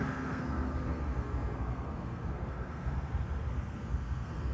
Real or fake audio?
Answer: fake